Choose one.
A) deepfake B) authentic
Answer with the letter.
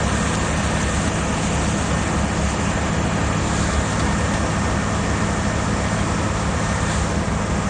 B